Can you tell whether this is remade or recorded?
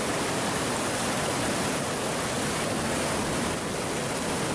recorded